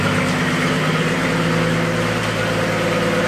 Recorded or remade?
recorded